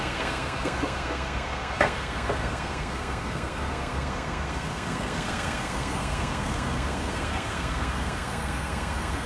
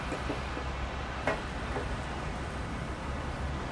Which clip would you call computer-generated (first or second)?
first